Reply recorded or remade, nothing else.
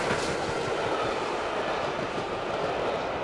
recorded